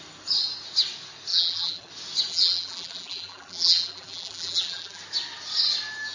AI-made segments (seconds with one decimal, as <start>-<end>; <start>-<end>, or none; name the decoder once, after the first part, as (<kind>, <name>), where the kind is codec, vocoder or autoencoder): 1.3-1.9 (vocoder, BigVGAN v2); 2.3-5.0